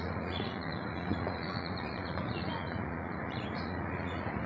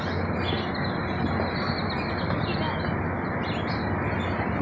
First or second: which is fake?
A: first